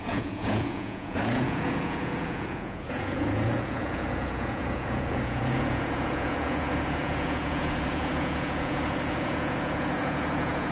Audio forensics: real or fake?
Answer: fake